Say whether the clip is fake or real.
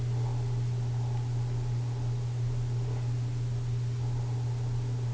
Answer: real